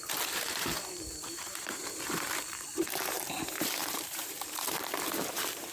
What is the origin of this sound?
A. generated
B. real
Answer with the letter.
A